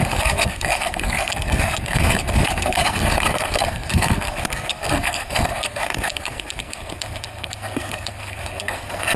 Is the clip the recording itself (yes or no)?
no